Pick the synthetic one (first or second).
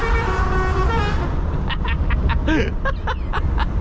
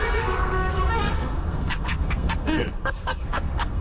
second